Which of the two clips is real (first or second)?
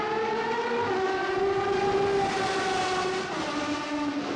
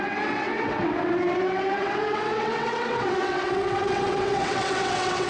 first